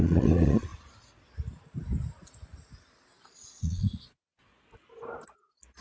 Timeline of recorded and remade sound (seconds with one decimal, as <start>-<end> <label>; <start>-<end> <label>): 0.0-0.7 remade; 0.7-3.6 recorded; 3.6-4.5 remade; 4.5-5.8 recorded